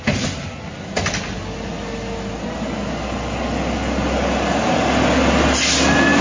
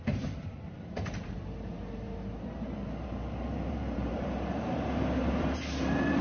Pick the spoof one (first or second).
second